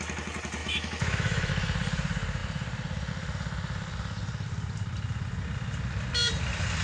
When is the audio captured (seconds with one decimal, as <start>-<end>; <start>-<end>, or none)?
0.0-0.6; 1.5-6.8